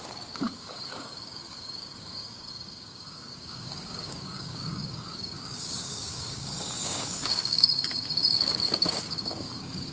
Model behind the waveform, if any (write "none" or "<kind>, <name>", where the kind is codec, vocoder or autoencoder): codec, DAC